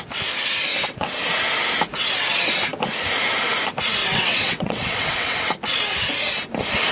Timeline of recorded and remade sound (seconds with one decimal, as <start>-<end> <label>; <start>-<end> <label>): 0.0-0.7 recorded; 0.7-1.3 remade; 1.3-4.0 recorded; 4.0-5.5 remade; 5.5-6.9 recorded